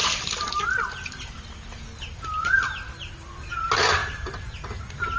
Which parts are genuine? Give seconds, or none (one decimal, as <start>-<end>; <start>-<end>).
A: 0.0-5.2

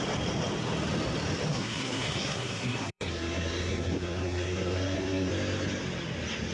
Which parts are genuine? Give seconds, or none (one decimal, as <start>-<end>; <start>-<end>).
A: 0.0-1.5; 5.3-6.5

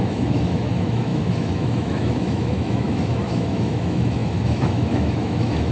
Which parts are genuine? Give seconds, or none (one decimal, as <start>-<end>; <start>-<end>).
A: none